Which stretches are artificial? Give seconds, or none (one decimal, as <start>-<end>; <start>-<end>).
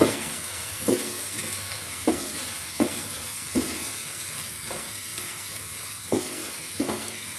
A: 0.0-7.4